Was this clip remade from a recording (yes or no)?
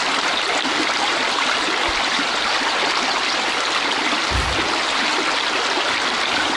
no